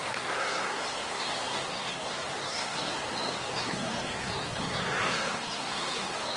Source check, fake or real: fake